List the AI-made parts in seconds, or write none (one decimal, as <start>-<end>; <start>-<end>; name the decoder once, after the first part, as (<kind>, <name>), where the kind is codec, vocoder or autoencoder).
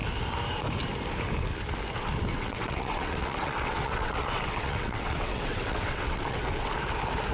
2.3-6.7 (vocoder, WaveNeXt)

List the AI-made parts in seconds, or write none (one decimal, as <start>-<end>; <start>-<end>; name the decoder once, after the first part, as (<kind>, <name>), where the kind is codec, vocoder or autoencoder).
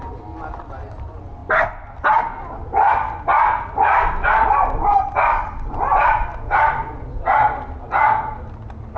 0.0-3.3 (vocoder, BigVGAN v2); 4.3-9.0